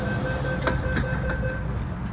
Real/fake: real